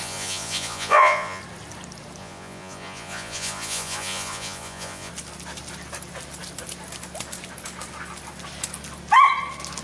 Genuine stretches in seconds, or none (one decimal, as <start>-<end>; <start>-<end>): 1.4-2.2; 5.1-9.8

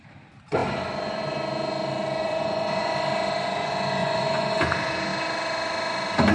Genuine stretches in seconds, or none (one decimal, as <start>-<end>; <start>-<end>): 0.0-2.2; 2.9-4.0; 4.5-6.3

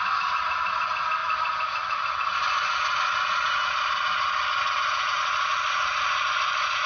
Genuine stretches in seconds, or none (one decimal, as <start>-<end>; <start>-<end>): 0.0-6.9

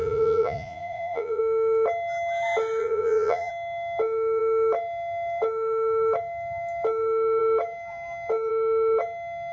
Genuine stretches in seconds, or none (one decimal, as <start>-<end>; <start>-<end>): 1.4-2.8; 3.5-9.5

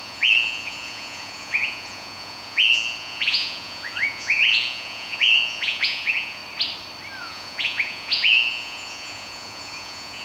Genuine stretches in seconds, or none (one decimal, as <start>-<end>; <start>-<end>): 6.4-7.2

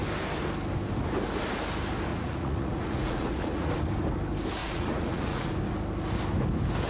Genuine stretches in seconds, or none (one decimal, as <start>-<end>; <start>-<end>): 0.0-2.1; 3.7-4.6; 5.5-6.9